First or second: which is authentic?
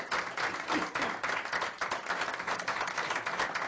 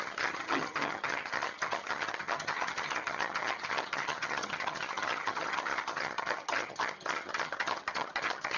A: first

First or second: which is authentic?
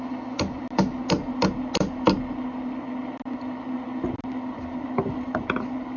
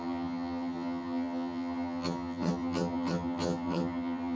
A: first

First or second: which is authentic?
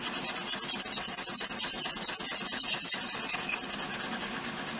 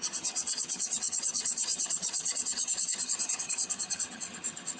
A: first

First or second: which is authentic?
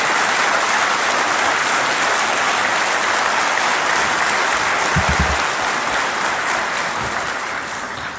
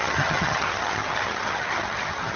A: first